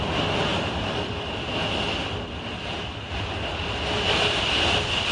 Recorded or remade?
recorded